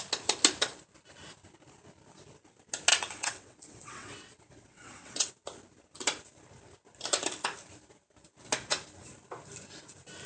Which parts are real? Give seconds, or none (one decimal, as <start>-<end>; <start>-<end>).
0.0-2.9; 5.3-10.3